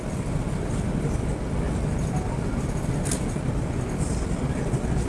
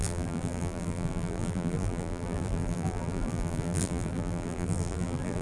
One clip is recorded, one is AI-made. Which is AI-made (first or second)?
second